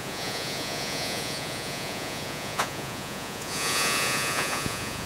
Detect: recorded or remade remade